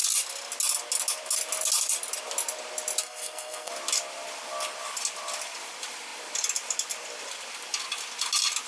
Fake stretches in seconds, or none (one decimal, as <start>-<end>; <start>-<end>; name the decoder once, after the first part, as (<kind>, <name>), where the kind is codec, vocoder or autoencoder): 3.0-3.7 (codec, SNAC)